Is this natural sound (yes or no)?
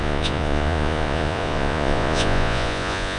no